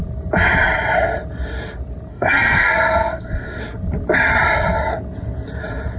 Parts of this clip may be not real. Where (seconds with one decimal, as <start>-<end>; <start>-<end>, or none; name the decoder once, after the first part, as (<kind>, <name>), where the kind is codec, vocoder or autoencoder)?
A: 2.1-3.6 (codec, SNAC)